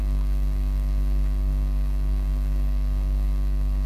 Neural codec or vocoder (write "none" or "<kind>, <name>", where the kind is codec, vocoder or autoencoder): codec, DAC